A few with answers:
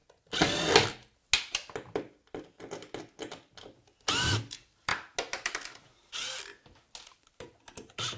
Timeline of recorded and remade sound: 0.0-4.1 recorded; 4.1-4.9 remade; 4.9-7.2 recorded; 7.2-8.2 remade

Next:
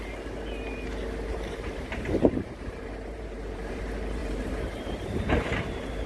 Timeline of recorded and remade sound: 0.0-1.3 recorded; 1.3-3.8 remade; 3.8-4.2 recorded; 4.2-5.3 remade; 5.3-6.1 recorded

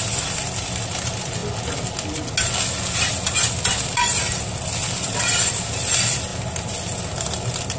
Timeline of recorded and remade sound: 0.0-1.4 remade; 1.4-3.2 recorded; 3.2-7.8 remade

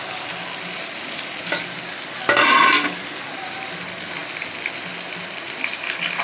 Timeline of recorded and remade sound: 0.0-6.2 recorded

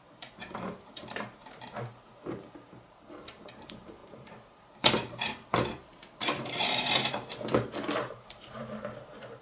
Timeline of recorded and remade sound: 0.0-9.4 remade

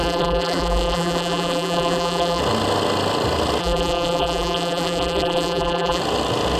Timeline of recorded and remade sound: 0.0-2.4 remade; 2.4-3.6 recorded; 3.6-6.0 remade; 6.0-6.6 recorded

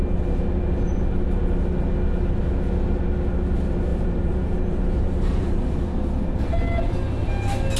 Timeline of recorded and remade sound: 0.0-3.9 recorded; 3.9-5.7 remade; 5.7-7.8 recorded

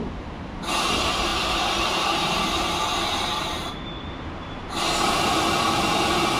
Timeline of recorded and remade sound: 0.0-6.4 remade